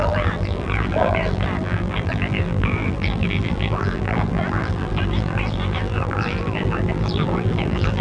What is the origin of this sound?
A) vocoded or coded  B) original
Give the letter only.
A